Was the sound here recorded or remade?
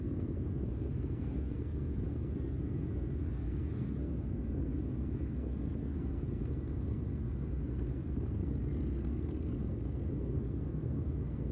remade